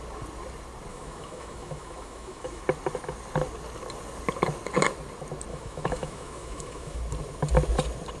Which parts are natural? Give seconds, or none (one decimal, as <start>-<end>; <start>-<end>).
0.0-0.9; 2.6-5.5; 7.0-8.2